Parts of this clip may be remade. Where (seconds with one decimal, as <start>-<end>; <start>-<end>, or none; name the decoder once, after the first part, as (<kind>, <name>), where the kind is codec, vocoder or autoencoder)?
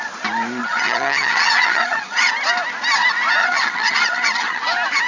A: 0.6-2.3 (vocoder, HiFi-GAN); 3.4-4.6